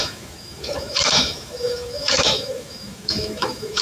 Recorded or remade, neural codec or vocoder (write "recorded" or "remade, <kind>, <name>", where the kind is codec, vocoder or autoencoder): remade, autoencoder, DAC-VAE